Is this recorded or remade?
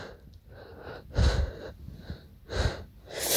recorded